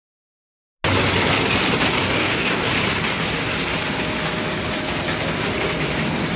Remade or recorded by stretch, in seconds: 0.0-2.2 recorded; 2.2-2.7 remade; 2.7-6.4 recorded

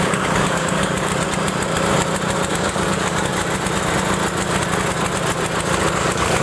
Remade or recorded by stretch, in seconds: 0.0-1.1 remade; 1.1-2.5 recorded; 2.5-3.3 remade; 3.3-5.9 recorded; 5.9-6.4 remade

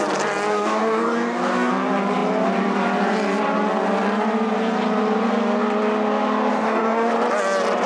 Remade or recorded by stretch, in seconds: 0.0-0.5 recorded; 0.5-1.7 remade; 1.7-6.5 recorded; 6.5-7.1 remade; 7.1-7.9 recorded

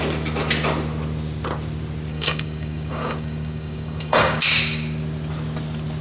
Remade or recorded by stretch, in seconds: 0.0-2.1 recorded; 2.1-4.4 remade; 4.4-6.0 recorded

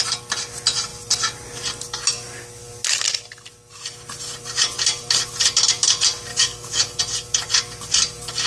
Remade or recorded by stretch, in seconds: 0.0-6.3 recorded; 6.3-7.0 remade; 7.0-8.5 recorded

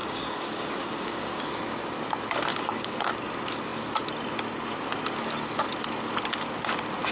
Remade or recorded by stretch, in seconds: 0.0-1.4 remade; 1.4-2.5 recorded; 2.5-3.1 remade; 3.1-7.1 recorded